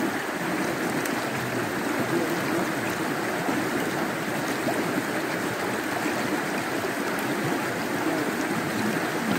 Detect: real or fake real